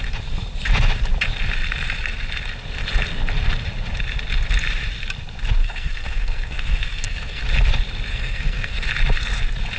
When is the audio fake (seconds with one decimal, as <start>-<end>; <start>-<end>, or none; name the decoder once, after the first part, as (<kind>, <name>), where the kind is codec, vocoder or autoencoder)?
5.6-7.4 (codec, SNAC); 8.1-8.9

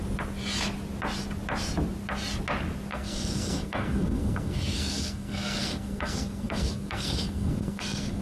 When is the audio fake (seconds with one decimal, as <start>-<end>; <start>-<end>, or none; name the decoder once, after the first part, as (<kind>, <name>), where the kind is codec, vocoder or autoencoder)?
2.9-8.2 (codec, SNAC)